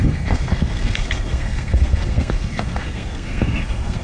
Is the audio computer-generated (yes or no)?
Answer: yes